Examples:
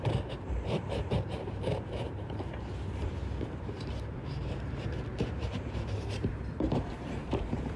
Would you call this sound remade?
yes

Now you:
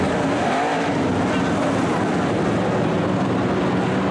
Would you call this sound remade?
no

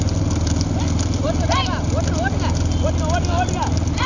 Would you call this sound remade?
no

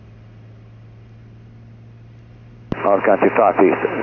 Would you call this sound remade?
no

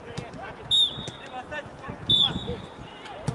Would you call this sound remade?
no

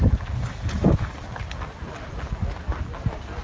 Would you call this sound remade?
no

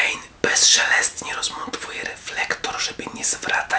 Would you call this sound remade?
no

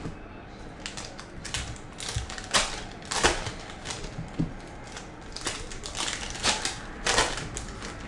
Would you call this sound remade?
no